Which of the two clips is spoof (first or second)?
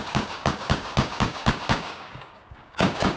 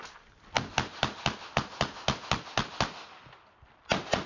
first